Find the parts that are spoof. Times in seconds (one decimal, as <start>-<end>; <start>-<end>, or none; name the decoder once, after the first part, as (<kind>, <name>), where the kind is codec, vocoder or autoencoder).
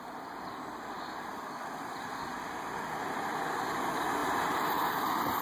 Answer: none